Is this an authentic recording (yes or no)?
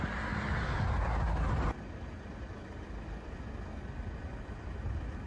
yes